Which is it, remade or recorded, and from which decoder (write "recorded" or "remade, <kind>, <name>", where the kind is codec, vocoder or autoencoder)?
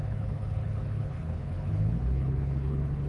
remade, codec, HILCodec